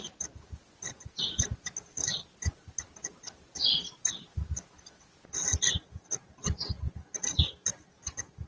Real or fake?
real